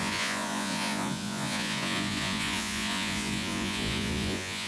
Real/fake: fake